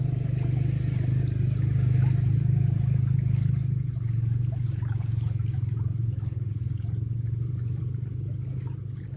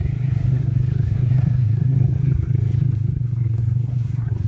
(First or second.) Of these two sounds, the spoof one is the second